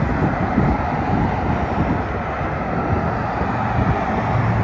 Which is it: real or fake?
real